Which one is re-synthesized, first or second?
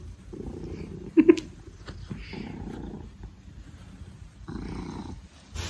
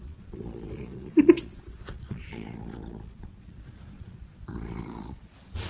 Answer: second